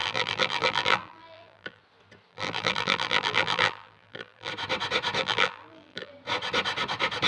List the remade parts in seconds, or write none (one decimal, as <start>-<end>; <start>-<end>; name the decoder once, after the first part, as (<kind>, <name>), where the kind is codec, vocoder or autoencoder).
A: 0.0-1.8 (vocoder, BigVGAN v2); 2.3-4.5; 5.2-6.1